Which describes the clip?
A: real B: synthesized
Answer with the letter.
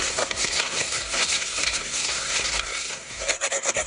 B